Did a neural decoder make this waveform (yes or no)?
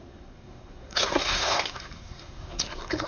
yes